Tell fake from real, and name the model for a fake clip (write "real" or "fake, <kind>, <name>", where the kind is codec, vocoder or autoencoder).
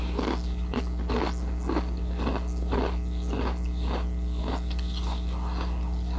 real